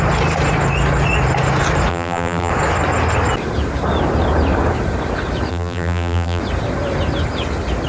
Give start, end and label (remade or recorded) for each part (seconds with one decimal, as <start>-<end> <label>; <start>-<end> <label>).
0.0-1.9 recorded; 1.9-2.5 remade; 2.5-5.5 recorded; 5.5-6.4 remade; 6.4-7.9 recorded